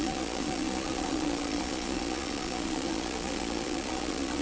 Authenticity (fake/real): fake